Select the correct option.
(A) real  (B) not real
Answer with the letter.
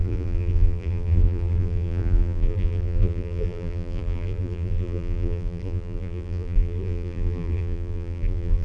B